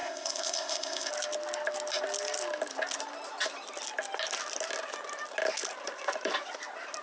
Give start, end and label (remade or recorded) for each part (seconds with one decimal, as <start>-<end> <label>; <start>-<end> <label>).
0.0-1.1 remade; 1.1-7.0 recorded